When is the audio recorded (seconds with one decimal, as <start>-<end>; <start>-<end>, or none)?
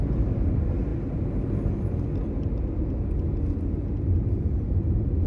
0.0-5.3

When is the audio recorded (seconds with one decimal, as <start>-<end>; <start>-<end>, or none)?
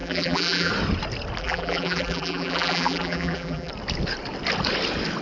0.7-1.4; 3.7-5.2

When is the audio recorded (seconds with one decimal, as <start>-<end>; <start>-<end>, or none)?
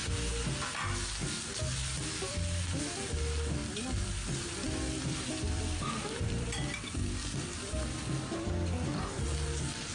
0.0-3.6; 8.0-9.9